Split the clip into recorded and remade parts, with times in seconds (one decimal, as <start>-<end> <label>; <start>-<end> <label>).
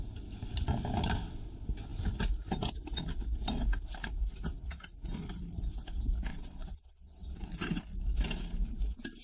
0.0-6.3 recorded; 6.3-7.8 remade; 7.8-9.2 recorded